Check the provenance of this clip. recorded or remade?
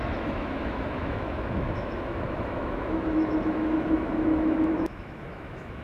remade